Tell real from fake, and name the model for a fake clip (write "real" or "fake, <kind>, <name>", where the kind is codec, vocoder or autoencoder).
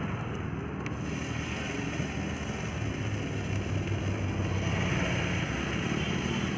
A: real